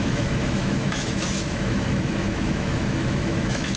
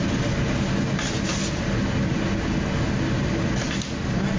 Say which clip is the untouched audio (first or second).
second